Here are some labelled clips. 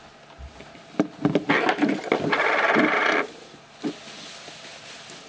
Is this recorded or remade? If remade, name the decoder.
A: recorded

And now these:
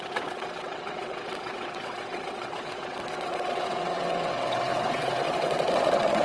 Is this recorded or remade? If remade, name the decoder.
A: remade, vocoder, WaveNeXt